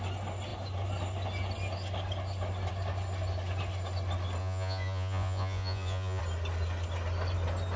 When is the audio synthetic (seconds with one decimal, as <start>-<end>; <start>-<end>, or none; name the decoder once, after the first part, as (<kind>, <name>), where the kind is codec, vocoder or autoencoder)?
4.4-6.2 (vocoder, Vocos)